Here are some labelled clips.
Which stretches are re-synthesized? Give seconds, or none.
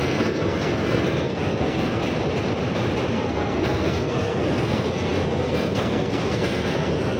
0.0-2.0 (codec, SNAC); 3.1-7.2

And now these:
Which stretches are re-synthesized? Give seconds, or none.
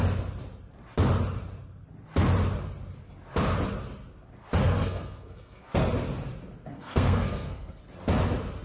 4.8-5.8 (codec, SNAC); 6.7-7.8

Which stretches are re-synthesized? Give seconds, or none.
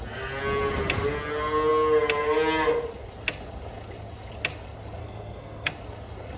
5.0-5.7 (codec, SNAC)